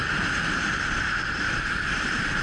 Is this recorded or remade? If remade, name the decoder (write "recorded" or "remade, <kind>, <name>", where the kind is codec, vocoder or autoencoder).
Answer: remade, vocoder, BigVGAN v2